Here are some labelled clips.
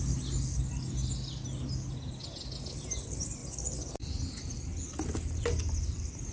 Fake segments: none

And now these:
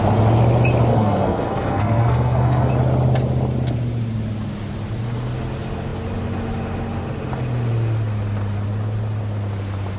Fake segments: 0.9-2.7 (codec, SNAC)

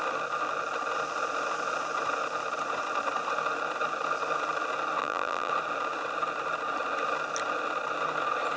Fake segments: 5.0-5.5 (vocoder, BigVGAN v2)

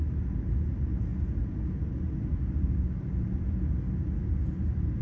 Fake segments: none